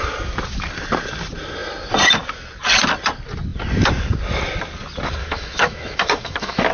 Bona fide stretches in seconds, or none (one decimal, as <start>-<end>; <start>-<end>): 0.0-5.2